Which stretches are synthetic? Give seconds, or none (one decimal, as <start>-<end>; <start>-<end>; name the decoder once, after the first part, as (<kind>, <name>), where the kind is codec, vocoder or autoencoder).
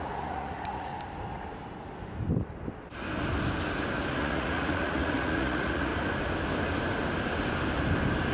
0.0-0.9 (vocoder, Vocos); 4.2-5.9